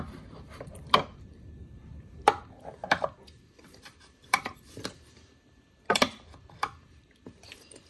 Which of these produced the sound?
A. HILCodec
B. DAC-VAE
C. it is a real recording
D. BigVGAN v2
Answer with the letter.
D